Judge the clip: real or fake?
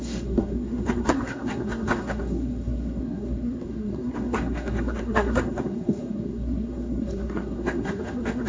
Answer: fake